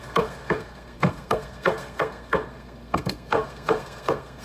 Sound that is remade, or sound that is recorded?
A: remade